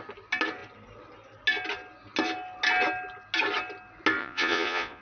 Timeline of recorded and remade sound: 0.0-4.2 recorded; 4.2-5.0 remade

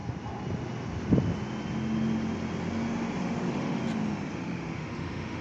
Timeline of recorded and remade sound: 0.0-3.2 recorded; 3.2-3.8 remade; 3.8-4.3 recorded; 4.3-5.4 remade

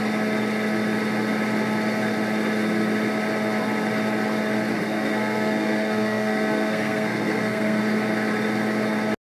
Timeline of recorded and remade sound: 0.0-4.7 recorded; 4.7-7.8 remade; 7.8-9.3 recorded

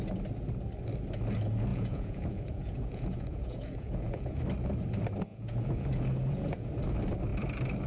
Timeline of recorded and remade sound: 0.0-1.7 recorded; 1.7-4.4 remade; 4.4-5.3 recorded; 5.3-6.7 remade; 6.7-7.9 recorded

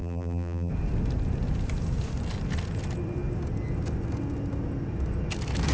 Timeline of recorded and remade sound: 0.0-0.7 remade; 0.7-5.7 recorded